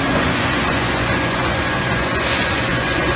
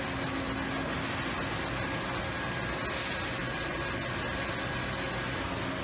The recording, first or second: second